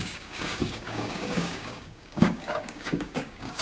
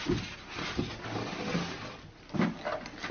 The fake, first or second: first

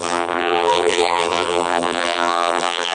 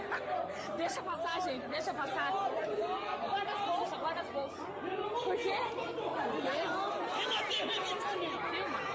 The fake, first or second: first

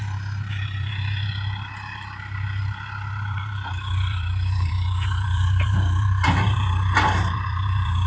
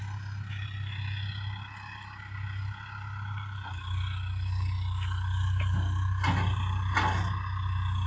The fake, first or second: first